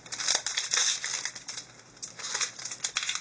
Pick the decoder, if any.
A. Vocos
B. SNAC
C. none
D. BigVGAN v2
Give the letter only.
C